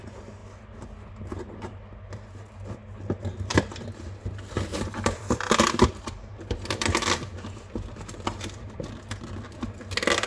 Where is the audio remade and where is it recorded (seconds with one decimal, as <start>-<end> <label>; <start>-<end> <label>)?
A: 0.0-3.5 recorded; 3.5-4.1 remade; 4.1-4.7 recorded; 4.7-9.2 remade; 9.2-10.3 recorded